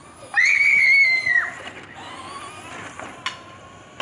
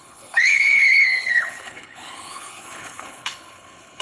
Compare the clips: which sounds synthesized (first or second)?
second